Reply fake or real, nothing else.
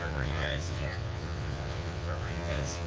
fake